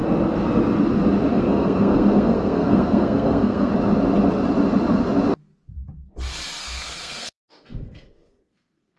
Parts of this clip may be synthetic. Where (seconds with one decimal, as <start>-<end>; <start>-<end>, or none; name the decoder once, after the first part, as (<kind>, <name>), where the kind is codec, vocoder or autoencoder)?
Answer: 1.3-3.7 (codec, SNAC); 6.6-9.0